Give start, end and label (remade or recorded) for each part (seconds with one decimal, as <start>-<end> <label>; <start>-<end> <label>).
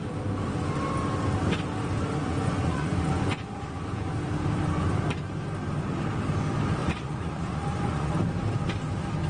0.0-2.2 recorded; 2.2-4.1 remade; 4.1-6.8 recorded; 6.8-8.1 remade; 8.1-9.3 recorded